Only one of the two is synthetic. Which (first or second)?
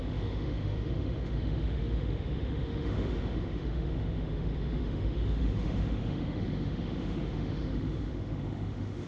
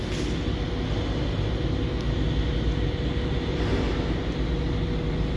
first